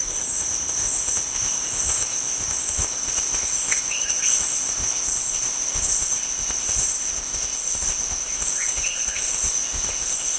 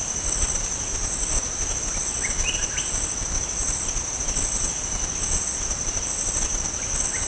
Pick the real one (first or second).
second